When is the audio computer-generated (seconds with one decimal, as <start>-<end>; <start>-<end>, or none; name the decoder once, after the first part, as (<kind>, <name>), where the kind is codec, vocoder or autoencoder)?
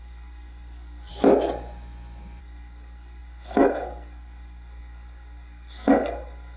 0.0-1.1 (codec, SNAC); 2.4-6.6